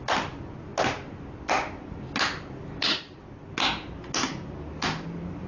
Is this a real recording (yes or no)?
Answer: yes